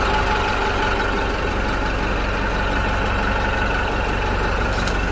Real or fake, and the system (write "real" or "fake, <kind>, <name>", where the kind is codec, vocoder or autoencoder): real